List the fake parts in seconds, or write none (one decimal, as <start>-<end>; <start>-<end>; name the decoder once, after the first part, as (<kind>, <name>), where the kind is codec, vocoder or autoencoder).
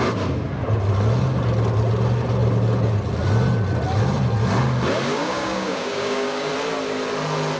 5.1-6.5 (codec, DAC)